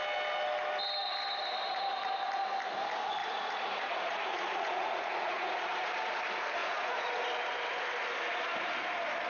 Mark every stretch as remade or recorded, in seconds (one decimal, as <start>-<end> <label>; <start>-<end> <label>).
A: 0.0-3.2 recorded; 3.2-5.7 remade; 5.7-6.6 recorded; 6.6-7.1 remade; 7.1-9.3 recorded